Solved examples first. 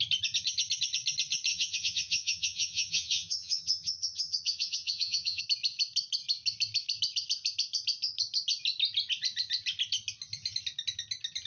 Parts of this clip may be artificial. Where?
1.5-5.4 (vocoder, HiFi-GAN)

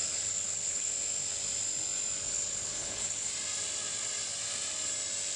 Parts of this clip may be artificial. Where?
0.0-0.9 (codec, HILCodec); 2.3-3.3

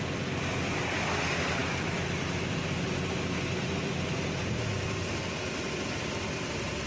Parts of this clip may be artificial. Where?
1.6-2.1 (autoencoder, DAC-VAE)

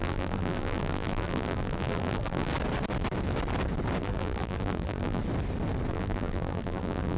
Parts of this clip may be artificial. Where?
0.0-2.5 (vocoder, BigVGAN v2); 4.0-5.2; 5.9-7.2

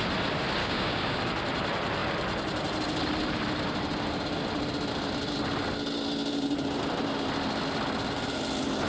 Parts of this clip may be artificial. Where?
0.6-1.2 (codec, DAC)